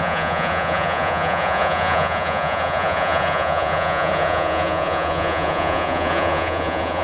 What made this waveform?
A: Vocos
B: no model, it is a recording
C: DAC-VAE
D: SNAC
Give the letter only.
A